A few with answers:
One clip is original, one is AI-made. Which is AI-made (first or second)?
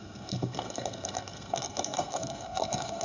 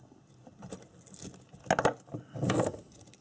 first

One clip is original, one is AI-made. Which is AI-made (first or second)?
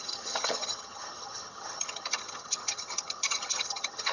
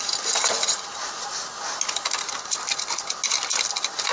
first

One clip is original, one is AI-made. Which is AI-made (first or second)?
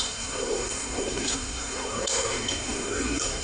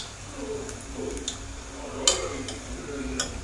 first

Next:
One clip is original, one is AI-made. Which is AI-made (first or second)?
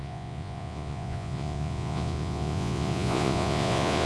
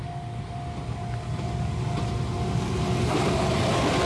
first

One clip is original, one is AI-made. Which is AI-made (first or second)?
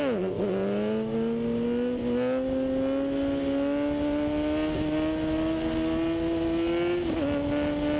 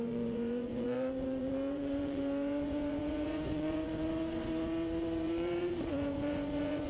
second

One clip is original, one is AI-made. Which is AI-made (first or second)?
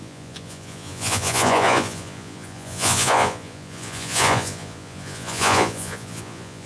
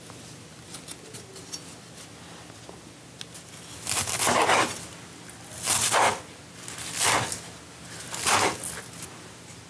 first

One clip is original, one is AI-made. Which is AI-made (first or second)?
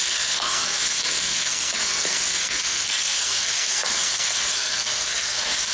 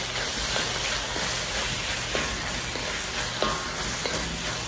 first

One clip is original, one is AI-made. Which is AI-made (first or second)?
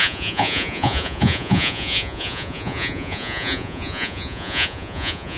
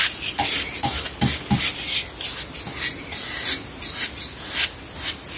first